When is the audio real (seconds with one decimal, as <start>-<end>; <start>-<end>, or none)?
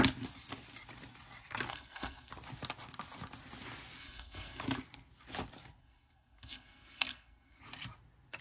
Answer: 0.0-1.7; 2.3-4.0; 4.6-5.8; 7.6-8.4